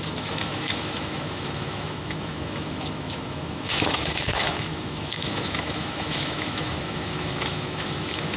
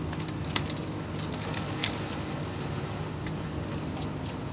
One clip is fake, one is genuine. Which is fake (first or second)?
first